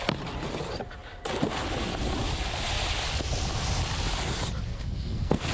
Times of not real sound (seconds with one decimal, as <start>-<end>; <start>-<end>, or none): 4.7-5.5

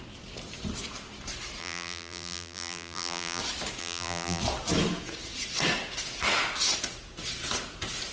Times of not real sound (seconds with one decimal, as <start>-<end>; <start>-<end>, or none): 1.6-3.4; 3.8-4.4

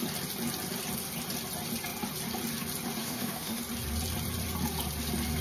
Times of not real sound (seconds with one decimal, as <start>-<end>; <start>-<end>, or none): 3.0-3.6

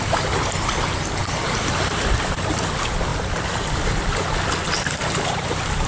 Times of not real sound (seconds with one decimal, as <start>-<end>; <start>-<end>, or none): none